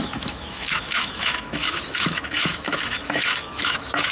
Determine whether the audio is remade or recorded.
remade